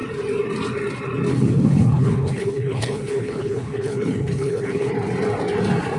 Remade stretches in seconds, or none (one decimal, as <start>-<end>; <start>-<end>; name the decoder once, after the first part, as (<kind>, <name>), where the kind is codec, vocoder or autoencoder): 1.3-4.9 (codec, HILCodec)